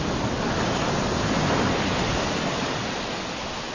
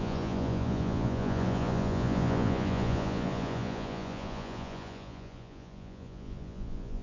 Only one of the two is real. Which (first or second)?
first